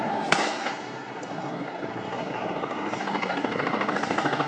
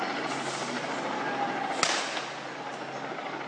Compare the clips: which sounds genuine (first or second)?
second